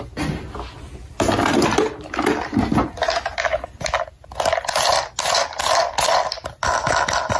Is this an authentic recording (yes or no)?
yes